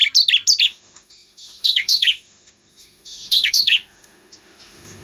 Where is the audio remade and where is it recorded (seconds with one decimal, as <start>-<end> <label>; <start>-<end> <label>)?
0.0-0.6 recorded; 0.6-5.0 remade